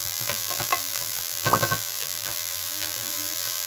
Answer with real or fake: fake